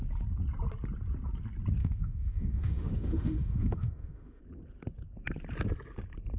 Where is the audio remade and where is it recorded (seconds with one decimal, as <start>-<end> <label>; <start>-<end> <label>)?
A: 0.0-1.8 recorded; 1.8-4.4 remade; 4.4-6.4 recorded